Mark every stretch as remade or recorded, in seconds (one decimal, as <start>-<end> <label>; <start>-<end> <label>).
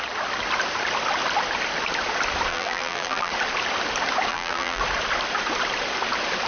0.0-2.5 recorded; 2.5-3.3 remade; 3.3-4.3 recorded; 4.3-4.8 remade; 4.8-6.5 recorded